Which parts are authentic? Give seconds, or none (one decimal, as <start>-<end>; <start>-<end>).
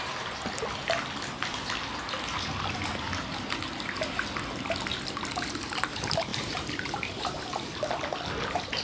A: 0.0-6.3; 7.4-8.8